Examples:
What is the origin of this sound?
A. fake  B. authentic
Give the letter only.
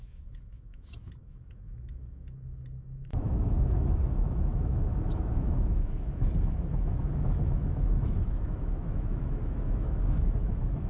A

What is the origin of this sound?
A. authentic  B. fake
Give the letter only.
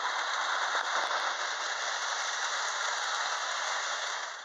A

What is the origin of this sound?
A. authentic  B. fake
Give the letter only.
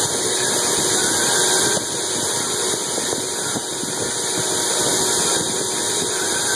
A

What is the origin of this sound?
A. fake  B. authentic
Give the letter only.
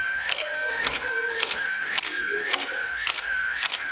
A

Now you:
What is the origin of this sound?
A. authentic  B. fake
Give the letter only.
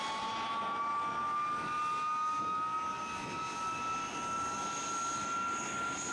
A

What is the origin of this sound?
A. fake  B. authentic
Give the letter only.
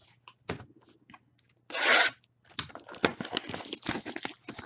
B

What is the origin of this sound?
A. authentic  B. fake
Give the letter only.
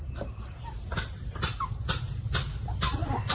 A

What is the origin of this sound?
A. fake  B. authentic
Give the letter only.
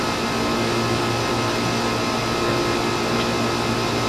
B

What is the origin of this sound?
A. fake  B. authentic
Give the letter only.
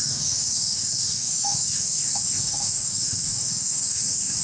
A